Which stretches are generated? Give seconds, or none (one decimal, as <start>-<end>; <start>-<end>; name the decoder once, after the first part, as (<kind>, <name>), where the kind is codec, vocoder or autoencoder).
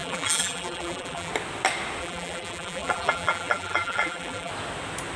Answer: 0.0-1.3 (vocoder, BigVGAN v2); 2.0-4.5